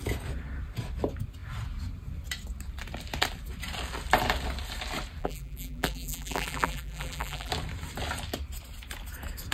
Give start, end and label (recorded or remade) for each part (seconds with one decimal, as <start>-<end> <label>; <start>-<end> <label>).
0.0-5.2 recorded; 5.2-7.5 remade; 7.5-9.5 recorded